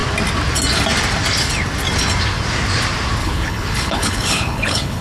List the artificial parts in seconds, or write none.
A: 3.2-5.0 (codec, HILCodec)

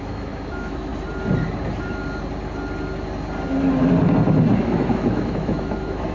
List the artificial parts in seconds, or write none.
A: 0.0-0.9 (autoencoder, DAC-VAE); 4.6-6.1

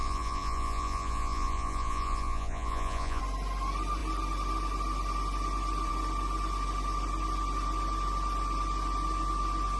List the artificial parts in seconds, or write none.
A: 0.0-3.2 (vocoder, Vocos)

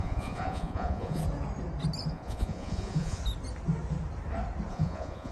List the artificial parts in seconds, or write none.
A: 0.0-1.2 (vocoder, Vocos); 2.1-3.2; 4.7-5.3

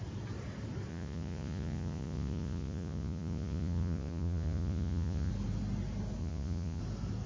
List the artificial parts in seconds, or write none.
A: 0.9-5.3 (vocoder, Vocos); 6.2-6.8

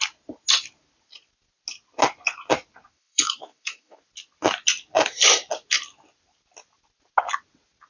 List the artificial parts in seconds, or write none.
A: 2.9-4.0 (autoencoder, DAC-VAE)

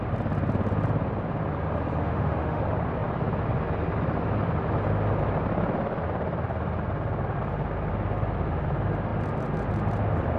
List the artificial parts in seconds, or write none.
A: 2.0-2.6 (autoencoder, DAC-VAE)

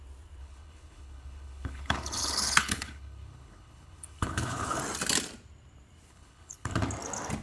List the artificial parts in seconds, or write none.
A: 0.4-4.8 (codec, HILCodec); 6.1-6.7